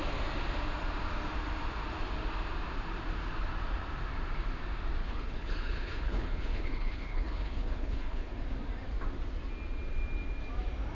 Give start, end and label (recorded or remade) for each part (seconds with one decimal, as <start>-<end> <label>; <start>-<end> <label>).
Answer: 0.0-5.0 recorded; 5.0-8.3 remade; 8.3-10.9 recorded